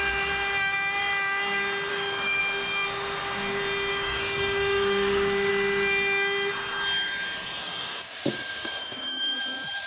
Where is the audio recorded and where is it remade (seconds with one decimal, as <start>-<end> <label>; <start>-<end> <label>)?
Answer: 0.0-1.9 recorded; 1.9-2.4 remade; 2.4-3.9 recorded; 3.9-5.5 remade; 5.5-7.6 recorded; 7.6-9.4 remade; 9.4-9.9 recorded